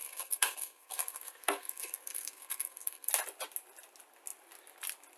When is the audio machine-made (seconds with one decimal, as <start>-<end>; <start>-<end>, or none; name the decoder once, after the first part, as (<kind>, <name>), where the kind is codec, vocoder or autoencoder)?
0.0-3.1 (codec, SNAC)